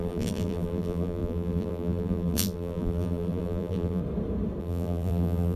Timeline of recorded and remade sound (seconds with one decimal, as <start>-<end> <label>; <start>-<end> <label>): 0.0-4.0 remade; 4.0-4.6 recorded; 4.6-5.6 remade